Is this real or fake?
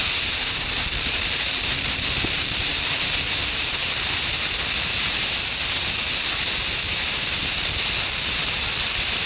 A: fake